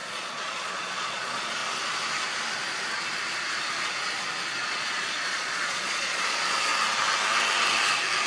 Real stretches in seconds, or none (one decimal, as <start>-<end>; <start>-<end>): 1.6-4.6; 6.7-8.3